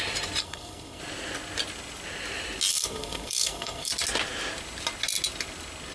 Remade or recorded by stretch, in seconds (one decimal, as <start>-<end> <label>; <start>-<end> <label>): 0.0-0.4 recorded; 0.4-1.0 remade; 1.0-2.7 recorded; 2.7-3.9 remade; 3.9-5.9 recorded